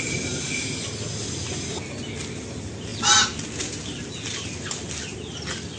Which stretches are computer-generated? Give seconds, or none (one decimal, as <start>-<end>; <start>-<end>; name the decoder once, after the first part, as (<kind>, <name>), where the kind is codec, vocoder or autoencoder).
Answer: none